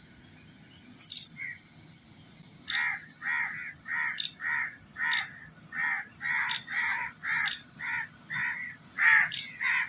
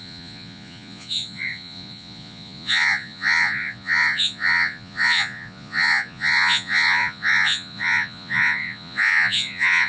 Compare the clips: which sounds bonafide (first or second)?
first